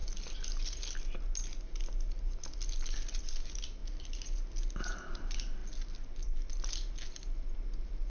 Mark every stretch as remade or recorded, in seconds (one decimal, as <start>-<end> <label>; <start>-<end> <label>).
0.0-8.1 recorded